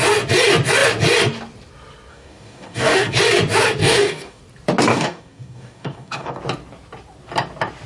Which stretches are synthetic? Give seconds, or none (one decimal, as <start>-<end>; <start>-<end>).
2.1-3.2; 3.8-4.4; 4.9-6.4